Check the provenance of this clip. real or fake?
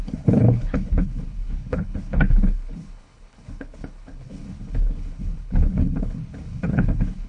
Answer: fake